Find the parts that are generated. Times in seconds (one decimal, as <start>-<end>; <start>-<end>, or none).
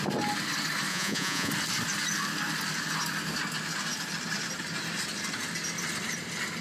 0.9-1.5